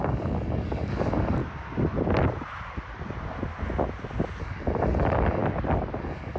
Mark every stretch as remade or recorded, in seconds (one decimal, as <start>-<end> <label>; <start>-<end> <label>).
0.0-1.4 remade; 1.4-4.4 recorded; 4.4-5.4 remade; 5.4-6.0 recorded; 6.0-6.4 remade